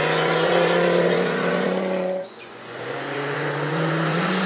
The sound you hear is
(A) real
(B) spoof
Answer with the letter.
B